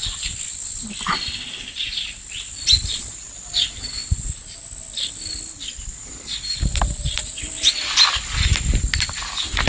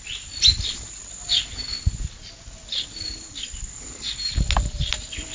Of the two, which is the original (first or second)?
second